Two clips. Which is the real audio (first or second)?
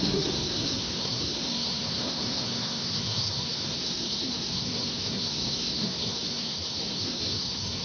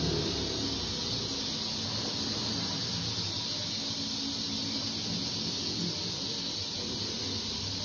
second